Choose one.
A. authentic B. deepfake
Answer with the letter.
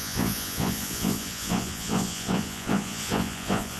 B